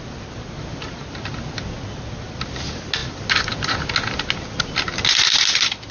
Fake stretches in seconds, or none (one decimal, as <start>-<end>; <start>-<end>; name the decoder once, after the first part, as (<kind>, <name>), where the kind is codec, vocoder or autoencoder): none